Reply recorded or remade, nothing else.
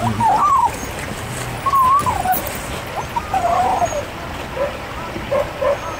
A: recorded